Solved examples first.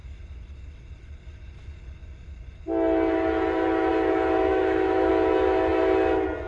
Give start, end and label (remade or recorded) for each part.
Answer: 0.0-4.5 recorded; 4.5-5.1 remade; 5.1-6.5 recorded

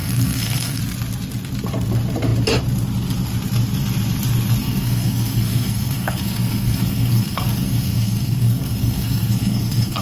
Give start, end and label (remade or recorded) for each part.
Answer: 0.0-0.8 remade; 0.8-4.6 recorded; 4.6-10.0 remade

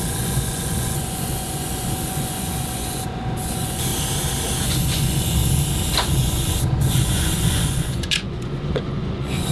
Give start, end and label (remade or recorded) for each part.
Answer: 0.0-3.9 remade; 3.9-4.6 recorded; 4.6-5.4 remade; 5.4-6.0 recorded; 6.0-9.5 remade